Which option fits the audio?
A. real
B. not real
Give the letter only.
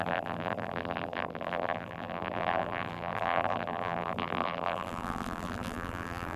B